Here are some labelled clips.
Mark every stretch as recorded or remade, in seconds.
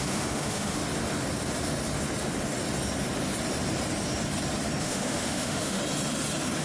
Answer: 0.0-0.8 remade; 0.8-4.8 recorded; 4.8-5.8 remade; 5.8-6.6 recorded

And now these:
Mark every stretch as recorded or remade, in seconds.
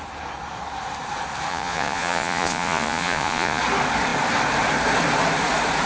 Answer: 0.0-1.5 recorded; 1.5-3.6 remade; 3.6-5.9 recorded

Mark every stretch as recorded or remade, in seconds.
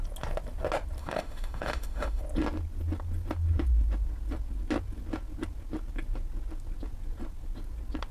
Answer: 0.0-1.0 recorded; 1.0-2.2 remade; 2.2-8.1 recorded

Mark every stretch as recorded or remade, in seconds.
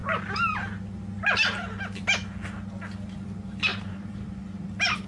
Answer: 0.0-3.7 recorded; 3.7-5.1 remade